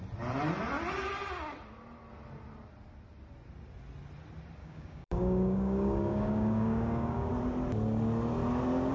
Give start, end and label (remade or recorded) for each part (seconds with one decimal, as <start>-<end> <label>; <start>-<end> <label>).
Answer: 0.0-4.6 recorded; 4.6-7.3 remade; 7.3-8.9 recorded